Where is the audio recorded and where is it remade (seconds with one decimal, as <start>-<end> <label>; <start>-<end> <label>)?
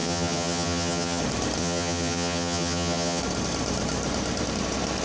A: 0.0-1.2 remade; 1.2-1.6 recorded; 1.6-3.2 remade; 3.2-5.0 recorded